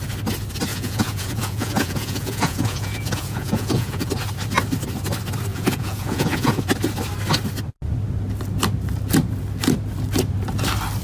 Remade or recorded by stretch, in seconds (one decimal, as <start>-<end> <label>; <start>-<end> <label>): 0.0-0.7 recorded; 0.7-4.1 remade; 4.1-5.5 recorded; 5.5-6.6 remade; 6.6-11.0 recorded